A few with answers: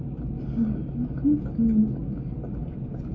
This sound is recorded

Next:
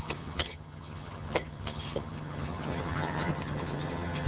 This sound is remade